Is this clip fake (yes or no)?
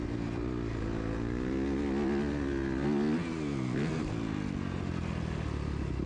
no